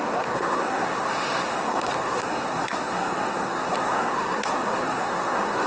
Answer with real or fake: fake